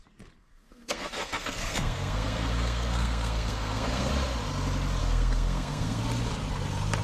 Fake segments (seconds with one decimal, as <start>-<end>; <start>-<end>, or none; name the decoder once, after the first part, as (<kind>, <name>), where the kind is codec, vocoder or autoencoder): 0.4-4.1 (codec, SNAC); 5.0-6.0